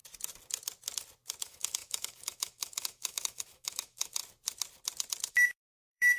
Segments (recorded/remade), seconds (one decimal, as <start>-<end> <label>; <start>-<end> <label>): 0.0-1.4 recorded; 1.4-4.2 remade; 4.2-5.3 recorded; 5.3-6.2 remade